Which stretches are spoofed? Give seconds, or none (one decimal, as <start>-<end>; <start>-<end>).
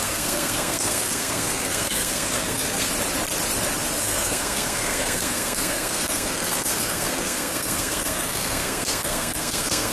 0.0-2.9; 4.0-9.9